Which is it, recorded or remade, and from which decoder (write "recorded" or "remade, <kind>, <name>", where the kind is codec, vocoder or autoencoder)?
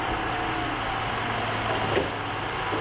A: recorded